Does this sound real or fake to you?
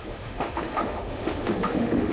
fake